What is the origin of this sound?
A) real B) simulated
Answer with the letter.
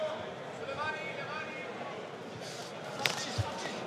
A